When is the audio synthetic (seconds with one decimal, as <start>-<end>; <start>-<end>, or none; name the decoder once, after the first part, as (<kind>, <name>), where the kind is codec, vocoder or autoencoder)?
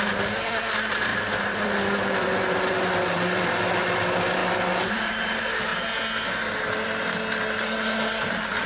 0.0-4.4 (vocoder, BigVGAN v2); 4.9-5.7; 8.2-8.7